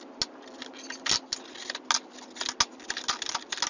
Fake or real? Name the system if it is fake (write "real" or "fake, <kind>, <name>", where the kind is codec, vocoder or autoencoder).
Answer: real